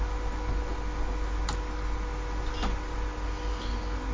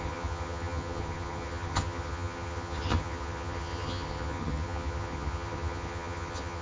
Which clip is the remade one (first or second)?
second